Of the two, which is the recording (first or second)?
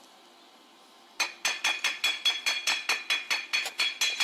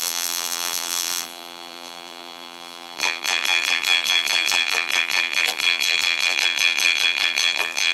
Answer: first